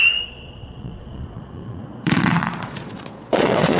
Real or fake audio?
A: fake